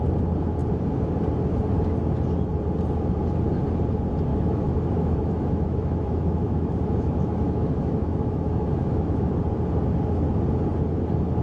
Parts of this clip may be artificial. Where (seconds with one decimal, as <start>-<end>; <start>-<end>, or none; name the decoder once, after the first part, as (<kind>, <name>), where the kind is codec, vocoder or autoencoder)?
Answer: 4.3-9.4 (autoencoder, DAC-VAE)